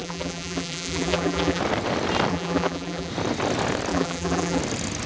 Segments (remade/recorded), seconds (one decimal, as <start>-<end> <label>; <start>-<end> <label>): 0.0-1.6 remade; 1.6-2.3 recorded; 2.3-3.1 remade; 3.1-3.9 recorded; 3.9-4.6 remade; 4.6-5.1 recorded